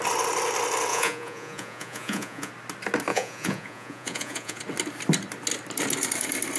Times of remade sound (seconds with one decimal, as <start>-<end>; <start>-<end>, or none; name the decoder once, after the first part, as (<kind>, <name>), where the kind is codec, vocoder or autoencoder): 0.9-2.5 (vocoder, Vocos); 3.1-4.6